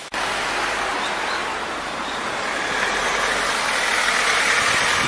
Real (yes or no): yes